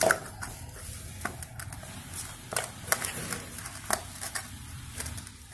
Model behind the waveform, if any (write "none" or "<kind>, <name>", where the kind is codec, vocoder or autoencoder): none